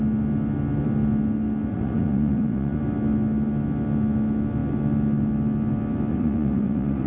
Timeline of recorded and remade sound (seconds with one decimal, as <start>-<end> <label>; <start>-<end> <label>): 0.0-1.7 recorded; 1.7-2.8 remade; 2.8-6.1 recorded; 6.1-7.1 remade